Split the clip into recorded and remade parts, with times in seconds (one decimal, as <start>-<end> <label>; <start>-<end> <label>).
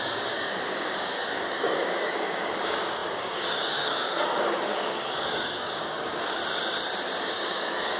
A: 0.0-6.4 remade; 6.4-7.2 recorded; 7.2-8.0 remade